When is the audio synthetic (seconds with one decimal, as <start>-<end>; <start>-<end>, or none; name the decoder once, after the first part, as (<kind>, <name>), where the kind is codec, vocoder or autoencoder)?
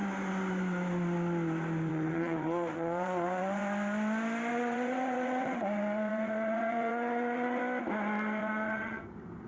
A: 1.9-3.6 (vocoder, WaveNeXt); 4.5-7.6; 8.4-9.0